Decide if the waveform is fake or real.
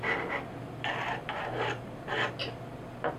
real